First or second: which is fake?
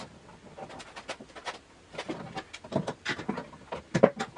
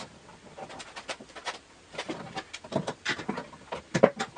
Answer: second